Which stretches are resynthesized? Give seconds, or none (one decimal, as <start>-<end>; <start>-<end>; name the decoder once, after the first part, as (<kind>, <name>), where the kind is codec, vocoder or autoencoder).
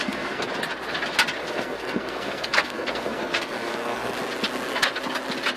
0.0-0.5 (codec, SNAC); 1.4-4.1